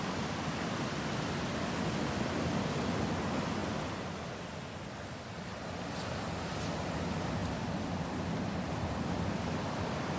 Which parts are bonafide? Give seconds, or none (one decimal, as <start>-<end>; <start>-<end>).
0.0-10.2

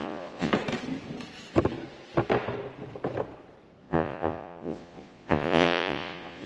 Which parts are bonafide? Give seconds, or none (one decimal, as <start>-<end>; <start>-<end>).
0.5-3.8

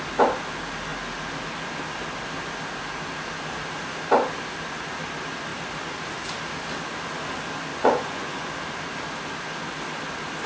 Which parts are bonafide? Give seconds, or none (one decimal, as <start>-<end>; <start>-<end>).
0.0-7.7; 8.5-10.5